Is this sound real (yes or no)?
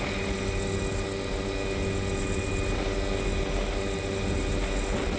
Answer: yes